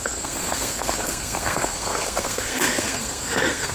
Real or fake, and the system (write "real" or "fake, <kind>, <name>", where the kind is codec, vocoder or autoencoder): fake, codec, SNAC